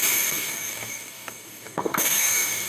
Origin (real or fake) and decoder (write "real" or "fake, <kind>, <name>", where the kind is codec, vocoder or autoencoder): fake, codec, DAC